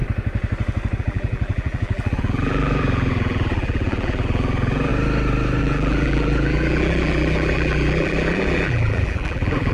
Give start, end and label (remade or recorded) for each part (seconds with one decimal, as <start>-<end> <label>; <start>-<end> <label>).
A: 0.0-1.0 recorded; 1.0-4.9 remade; 4.9-5.6 recorded; 5.6-9.7 remade